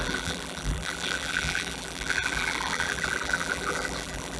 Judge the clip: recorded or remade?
remade